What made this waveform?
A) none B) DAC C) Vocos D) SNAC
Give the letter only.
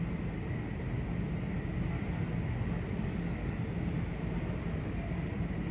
A